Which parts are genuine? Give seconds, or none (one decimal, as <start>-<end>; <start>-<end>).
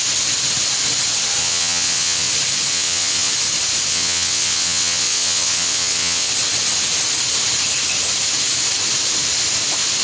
0.0-1.4; 2.3-2.7; 3.3-3.9; 6.3-10.0